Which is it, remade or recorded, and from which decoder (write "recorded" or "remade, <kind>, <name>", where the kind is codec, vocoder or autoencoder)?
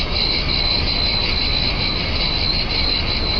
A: recorded